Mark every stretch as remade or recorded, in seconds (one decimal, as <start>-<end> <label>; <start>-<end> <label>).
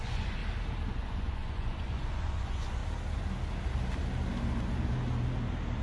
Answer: 0.0-0.4 remade; 0.4-0.9 recorded; 0.9-2.8 remade; 2.8-5.8 recorded